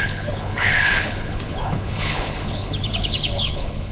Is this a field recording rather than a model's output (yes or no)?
no